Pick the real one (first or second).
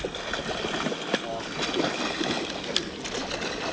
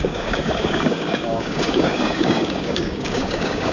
first